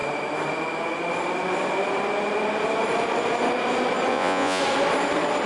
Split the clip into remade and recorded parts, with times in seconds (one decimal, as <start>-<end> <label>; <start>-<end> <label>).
0.0-4.1 recorded; 4.1-4.6 remade; 4.6-5.5 recorded